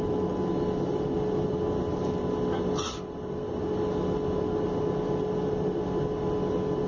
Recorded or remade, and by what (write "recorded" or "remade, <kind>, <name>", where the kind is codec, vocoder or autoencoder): recorded